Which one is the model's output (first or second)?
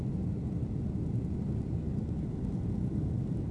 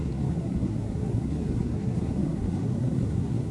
second